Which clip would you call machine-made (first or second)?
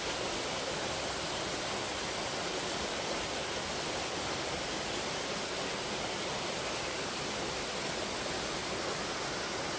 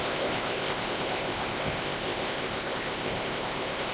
second